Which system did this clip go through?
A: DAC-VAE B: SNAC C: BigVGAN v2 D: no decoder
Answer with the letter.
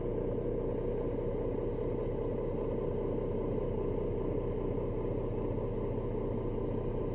D